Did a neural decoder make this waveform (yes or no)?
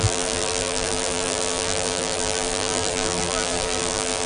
yes